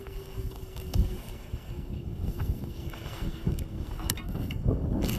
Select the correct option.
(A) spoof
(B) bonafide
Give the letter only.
A